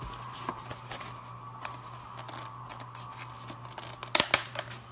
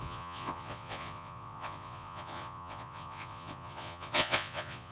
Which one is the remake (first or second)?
second